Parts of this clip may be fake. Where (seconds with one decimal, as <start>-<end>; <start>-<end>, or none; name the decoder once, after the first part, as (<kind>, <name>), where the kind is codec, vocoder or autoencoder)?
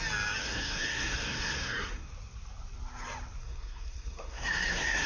0.4-2.1 (codec, SNAC); 3.4-5.1